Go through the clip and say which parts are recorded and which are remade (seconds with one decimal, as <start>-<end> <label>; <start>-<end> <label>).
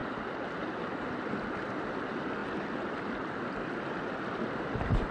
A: 0.0-5.1 recorded